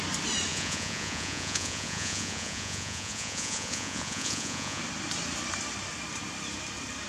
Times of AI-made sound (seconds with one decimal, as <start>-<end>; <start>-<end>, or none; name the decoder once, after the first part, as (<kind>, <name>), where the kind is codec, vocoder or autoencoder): 0.5-4.8 (vocoder, Vocos)